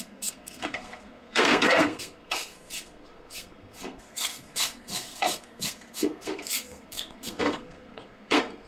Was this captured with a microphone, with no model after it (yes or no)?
no